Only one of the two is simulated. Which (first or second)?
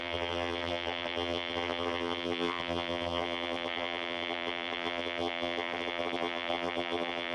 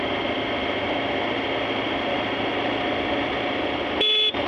first